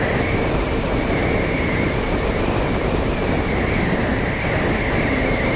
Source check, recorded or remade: recorded